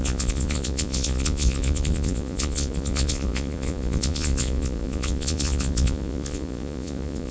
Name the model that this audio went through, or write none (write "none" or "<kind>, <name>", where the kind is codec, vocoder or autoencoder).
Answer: vocoder, Vocos